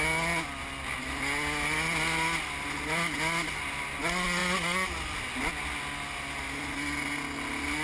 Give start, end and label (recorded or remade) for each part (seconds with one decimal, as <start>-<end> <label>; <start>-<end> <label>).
0.0-7.8 recorded